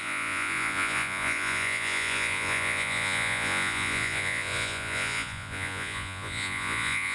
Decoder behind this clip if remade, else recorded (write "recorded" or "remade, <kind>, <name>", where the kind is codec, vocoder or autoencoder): remade, vocoder, Vocos